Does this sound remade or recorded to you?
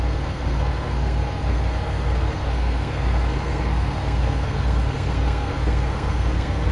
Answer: remade